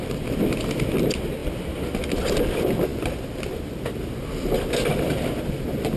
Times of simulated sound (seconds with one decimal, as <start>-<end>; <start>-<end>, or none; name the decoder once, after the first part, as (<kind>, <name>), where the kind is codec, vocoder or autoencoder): none